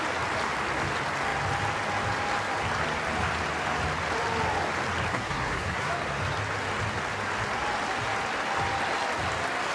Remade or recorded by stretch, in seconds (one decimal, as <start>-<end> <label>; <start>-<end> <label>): 0.0-5.1 recorded; 5.1-5.9 remade; 5.9-9.7 recorded